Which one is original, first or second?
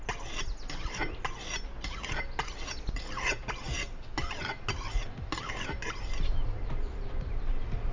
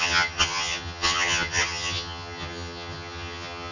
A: first